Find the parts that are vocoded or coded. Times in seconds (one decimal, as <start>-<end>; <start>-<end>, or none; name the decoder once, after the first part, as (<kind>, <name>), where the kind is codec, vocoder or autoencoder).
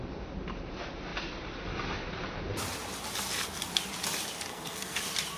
4.5-5.0 (codec, SNAC)